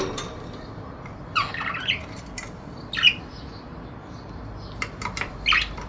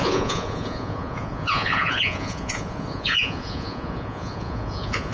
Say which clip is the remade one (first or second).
second